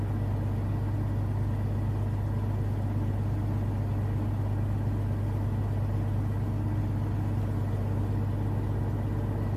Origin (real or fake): real